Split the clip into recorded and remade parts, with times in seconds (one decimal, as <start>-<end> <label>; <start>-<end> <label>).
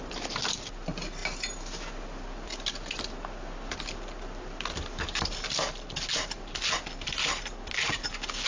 0.0-8.5 recorded